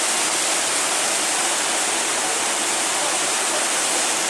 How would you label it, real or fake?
real